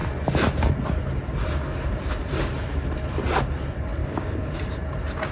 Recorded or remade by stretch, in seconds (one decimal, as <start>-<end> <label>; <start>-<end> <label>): 0.0-4.0 recorded; 4.0-4.5 remade; 4.5-5.3 recorded